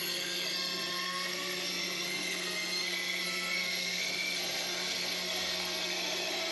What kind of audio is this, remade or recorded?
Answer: remade